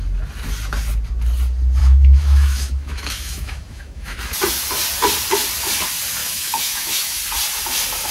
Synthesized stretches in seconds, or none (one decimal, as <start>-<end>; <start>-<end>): 1.8-4.2; 6.2-7.2